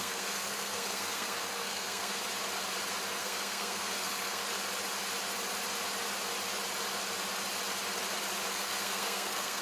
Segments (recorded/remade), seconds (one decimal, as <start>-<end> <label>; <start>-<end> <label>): 0.0-2.2 remade; 2.2-3.2 recorded; 3.2-4.4 remade; 4.4-8.5 recorded; 8.5-9.6 remade